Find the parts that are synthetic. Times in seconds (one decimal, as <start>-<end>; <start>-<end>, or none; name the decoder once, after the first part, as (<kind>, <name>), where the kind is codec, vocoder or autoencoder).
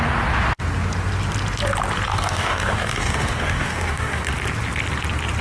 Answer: 2.1-4.3 (codec, DAC)